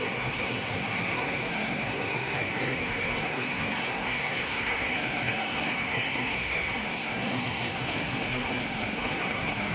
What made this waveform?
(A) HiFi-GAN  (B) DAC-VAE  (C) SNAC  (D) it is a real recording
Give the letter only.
C